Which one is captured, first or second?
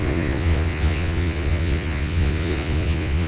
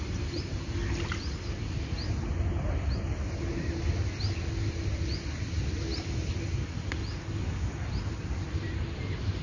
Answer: second